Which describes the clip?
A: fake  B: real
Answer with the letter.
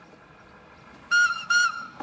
B